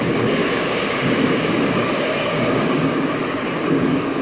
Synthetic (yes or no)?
yes